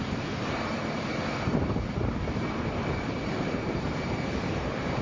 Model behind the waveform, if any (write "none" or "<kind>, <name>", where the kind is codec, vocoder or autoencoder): vocoder, BigVGAN v2